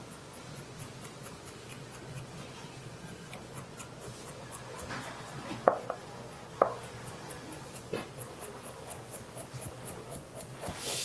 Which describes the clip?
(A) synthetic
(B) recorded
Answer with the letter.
A